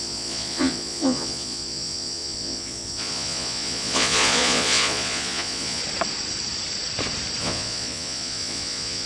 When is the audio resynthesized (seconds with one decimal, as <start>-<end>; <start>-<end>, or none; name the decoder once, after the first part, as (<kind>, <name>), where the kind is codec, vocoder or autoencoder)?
0.0-5.8 (vocoder, Vocos); 7.4-9.1